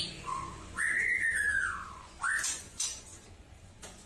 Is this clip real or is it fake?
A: fake